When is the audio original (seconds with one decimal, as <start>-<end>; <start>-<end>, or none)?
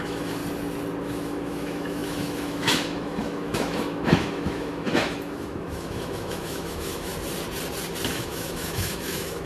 0.4-1.0; 7.1-8.1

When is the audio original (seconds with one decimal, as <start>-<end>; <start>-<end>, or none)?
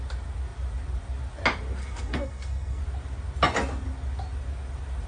0.0-1.8; 2.8-5.1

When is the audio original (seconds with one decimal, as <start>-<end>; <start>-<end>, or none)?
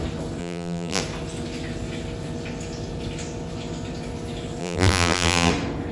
0.0-0.4; 1.0-4.6; 5.5-5.9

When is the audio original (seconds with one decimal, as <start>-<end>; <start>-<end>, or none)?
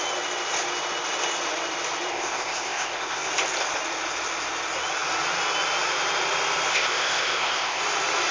0.0-2.1; 3.3-6.7; 7.8-8.3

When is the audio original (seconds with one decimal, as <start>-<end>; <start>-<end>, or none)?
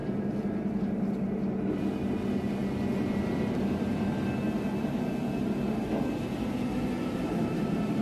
0.0-8.0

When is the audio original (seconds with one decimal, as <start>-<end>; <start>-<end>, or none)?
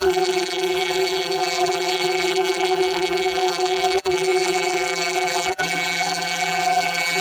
none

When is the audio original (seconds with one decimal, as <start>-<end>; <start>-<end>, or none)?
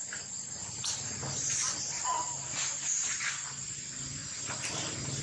0.0-5.2